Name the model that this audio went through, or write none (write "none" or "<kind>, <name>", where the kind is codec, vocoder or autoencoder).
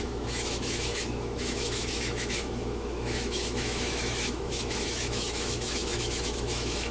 autoencoder, DAC-VAE